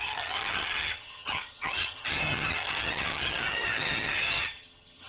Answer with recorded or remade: remade